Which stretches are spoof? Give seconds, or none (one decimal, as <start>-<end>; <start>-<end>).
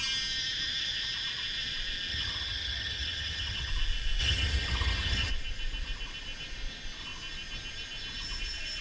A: 2.1-3.7; 4.2-5.3